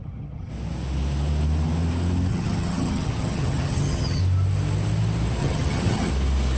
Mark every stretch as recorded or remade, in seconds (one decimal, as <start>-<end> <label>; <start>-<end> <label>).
0.0-0.5 remade; 0.5-2.3 recorded; 2.3-4.2 remade; 4.2-5.4 recorded; 5.4-6.1 remade; 6.1-6.6 recorded